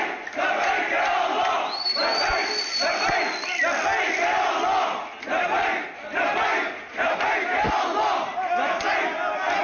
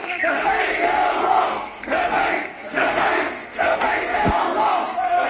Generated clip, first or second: second